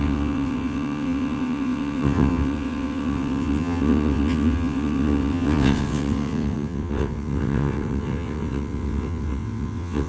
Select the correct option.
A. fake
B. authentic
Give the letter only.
A